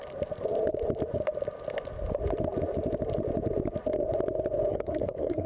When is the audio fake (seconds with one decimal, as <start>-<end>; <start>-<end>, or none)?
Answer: 4.7-5.5